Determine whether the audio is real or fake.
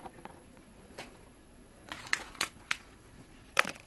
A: fake